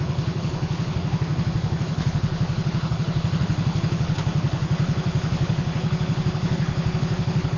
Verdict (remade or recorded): remade